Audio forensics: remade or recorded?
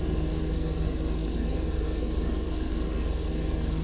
remade